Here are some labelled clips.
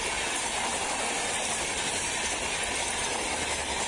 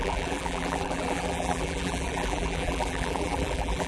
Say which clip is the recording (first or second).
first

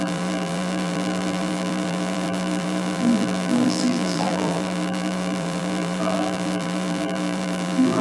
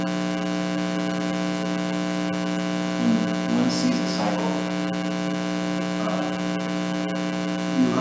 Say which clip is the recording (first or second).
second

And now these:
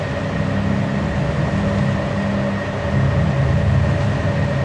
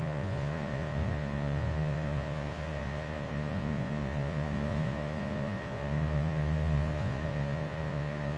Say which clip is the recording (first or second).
first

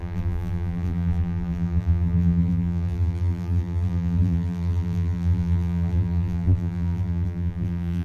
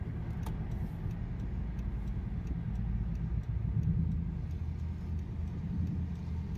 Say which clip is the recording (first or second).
second